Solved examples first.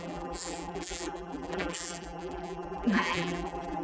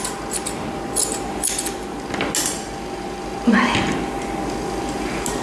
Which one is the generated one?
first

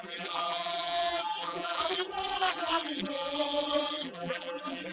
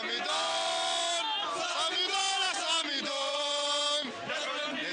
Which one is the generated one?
first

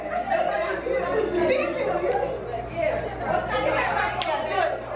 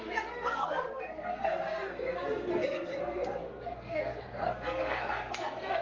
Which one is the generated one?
second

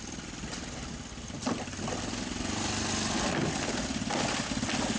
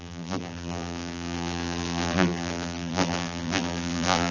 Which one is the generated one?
second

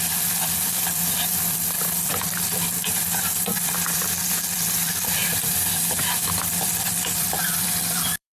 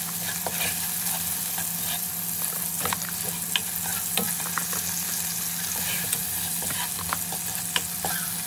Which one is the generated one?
first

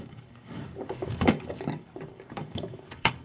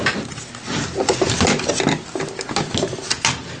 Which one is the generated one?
first